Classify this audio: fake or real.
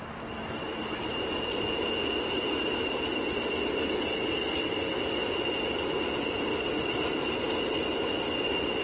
real